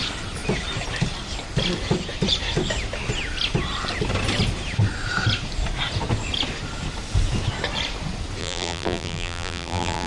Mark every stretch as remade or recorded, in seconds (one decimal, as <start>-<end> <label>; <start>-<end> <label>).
0.0-8.4 recorded; 8.4-10.1 remade